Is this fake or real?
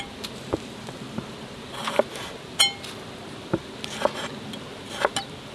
real